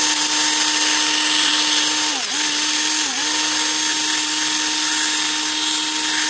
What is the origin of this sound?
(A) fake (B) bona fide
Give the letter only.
B